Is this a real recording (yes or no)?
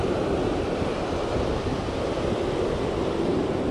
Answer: no